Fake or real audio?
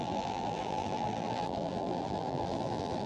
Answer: fake